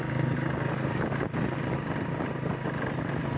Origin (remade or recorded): recorded